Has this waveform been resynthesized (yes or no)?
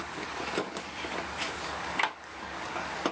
yes